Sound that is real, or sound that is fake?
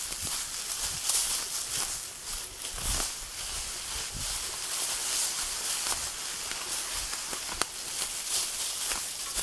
real